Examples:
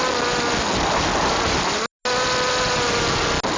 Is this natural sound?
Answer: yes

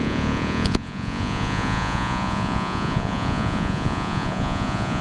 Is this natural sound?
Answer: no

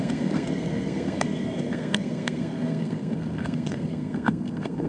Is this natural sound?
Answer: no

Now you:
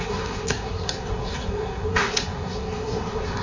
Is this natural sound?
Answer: no